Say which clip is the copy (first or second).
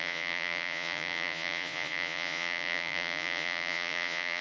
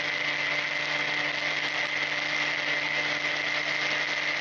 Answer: first